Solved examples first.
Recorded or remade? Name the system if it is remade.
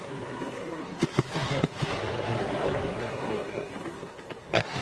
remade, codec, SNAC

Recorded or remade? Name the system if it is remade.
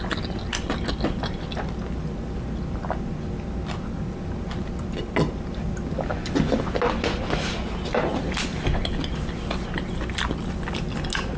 recorded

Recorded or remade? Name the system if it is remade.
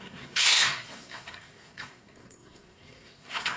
remade, codec, SNAC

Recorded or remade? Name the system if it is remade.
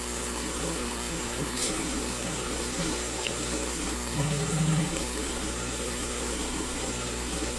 remade, codec, SNAC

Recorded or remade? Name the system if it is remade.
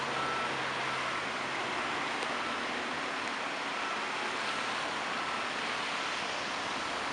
recorded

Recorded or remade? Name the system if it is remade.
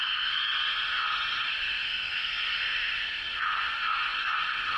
remade, codec, SNAC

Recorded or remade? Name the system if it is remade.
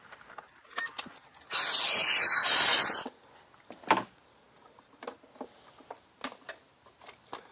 recorded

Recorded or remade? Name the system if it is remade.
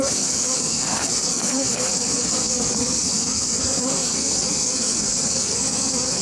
remade, codec, SNAC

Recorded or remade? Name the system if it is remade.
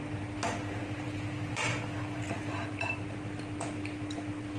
recorded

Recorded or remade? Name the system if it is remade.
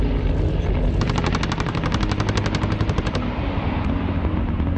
recorded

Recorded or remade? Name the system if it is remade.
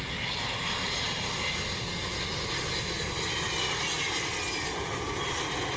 recorded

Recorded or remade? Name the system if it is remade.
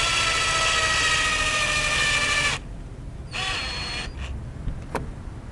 recorded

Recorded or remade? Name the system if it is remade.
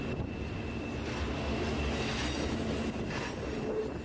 recorded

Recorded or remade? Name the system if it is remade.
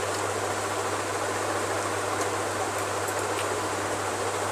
recorded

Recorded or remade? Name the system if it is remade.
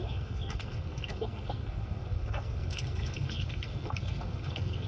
remade, codec, SNAC